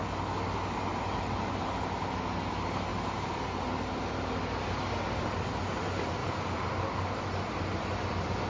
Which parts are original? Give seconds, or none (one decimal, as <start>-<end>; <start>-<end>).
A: 0.0-0.9; 1.5-2.9; 3.7-6.2; 6.7-8.5